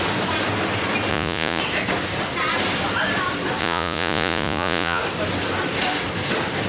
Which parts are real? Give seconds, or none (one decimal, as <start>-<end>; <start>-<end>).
0.0-1.1; 1.6-3.6; 5.0-6.7